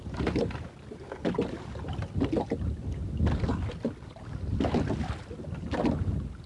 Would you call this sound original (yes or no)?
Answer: yes